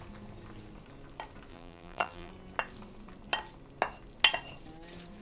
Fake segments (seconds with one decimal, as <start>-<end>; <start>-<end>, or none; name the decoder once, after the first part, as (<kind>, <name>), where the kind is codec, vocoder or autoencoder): 1.5-2.3 (vocoder, BigVGAN v2)